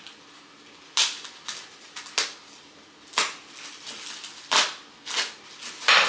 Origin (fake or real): real